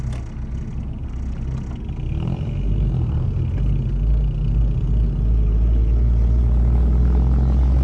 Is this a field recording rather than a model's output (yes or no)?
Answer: yes